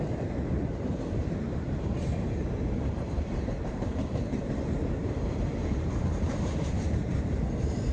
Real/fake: fake